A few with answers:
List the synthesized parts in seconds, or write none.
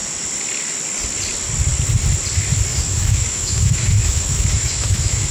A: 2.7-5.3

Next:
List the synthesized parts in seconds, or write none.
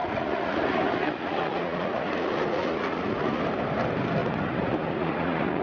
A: 0.0-3.4; 4.2-5.6